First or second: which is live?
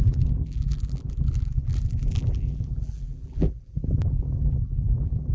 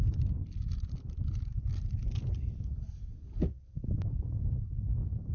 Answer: second